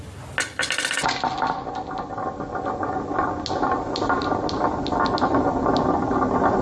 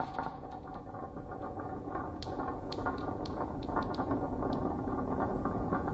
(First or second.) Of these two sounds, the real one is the first